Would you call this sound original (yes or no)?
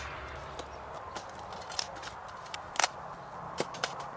yes